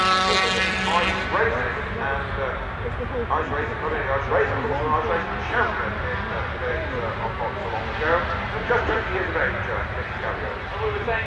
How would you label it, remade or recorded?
recorded